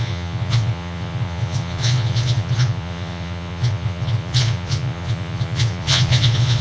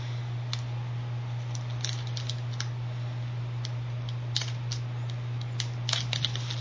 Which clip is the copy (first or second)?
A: first